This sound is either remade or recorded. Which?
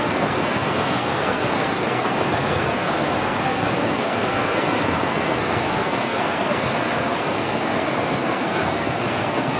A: remade